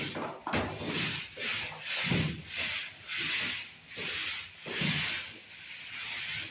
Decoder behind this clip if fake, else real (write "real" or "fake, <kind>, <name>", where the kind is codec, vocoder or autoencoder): real